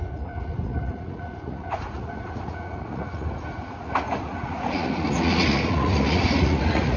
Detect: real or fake fake